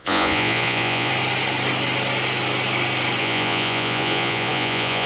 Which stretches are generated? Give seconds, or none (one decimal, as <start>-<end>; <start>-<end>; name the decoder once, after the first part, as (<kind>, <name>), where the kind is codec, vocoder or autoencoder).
0.0-1.1 (vocoder, Vocos); 3.2-5.1